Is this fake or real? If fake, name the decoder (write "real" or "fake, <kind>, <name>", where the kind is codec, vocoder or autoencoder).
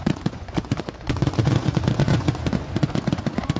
fake, vocoder, Vocos